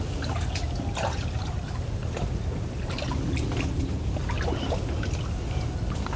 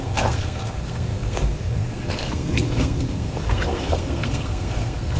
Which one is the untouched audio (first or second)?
first